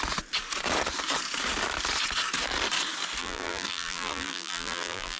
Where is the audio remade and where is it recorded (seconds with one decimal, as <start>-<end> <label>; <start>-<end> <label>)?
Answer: 0.0-3.2 recorded; 3.2-5.2 remade